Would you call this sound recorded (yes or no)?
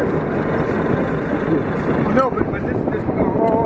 yes